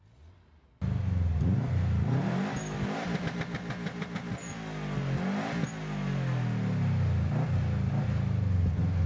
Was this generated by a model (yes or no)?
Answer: no